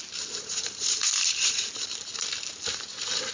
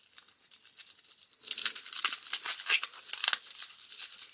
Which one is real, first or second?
second